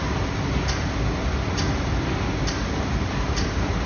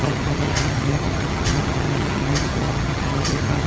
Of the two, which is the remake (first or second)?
second